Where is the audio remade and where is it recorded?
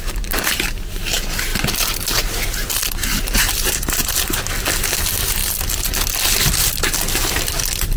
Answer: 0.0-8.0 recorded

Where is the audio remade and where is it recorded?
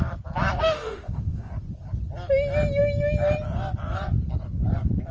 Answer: 0.0-0.6 recorded; 0.6-1.5 remade; 1.5-5.1 recorded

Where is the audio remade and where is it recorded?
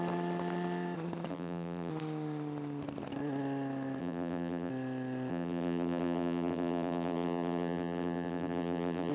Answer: 0.0-1.3 recorded; 1.3-1.9 remade; 1.9-4.0 recorded; 4.0-4.7 remade; 4.7-5.3 recorded; 5.3-9.1 remade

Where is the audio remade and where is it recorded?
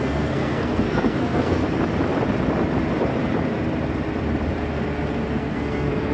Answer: 0.0-1.6 remade; 1.6-5.3 recorded; 5.3-6.1 remade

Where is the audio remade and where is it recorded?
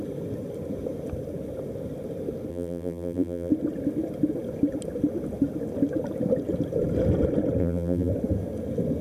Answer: 0.0-2.5 recorded; 2.5-3.5 remade; 3.5-7.6 recorded; 7.6-8.1 remade; 8.1-9.0 recorded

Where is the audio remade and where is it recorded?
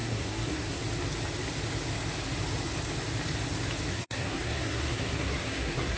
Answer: 0.0-0.8 remade; 0.8-3.9 recorded; 3.9-6.0 remade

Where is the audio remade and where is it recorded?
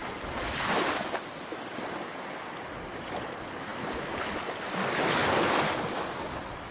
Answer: 0.0-3.2 remade; 3.2-6.7 recorded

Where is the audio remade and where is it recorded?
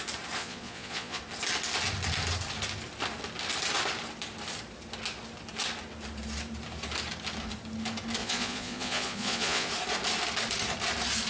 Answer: 0.0-0.4 recorded; 0.4-1.2 remade; 1.2-8.2 recorded; 8.2-9.7 remade; 9.7-11.3 recorded